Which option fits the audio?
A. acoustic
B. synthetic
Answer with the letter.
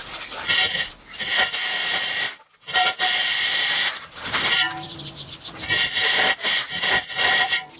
B